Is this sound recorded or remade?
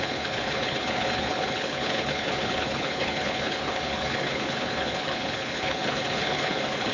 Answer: remade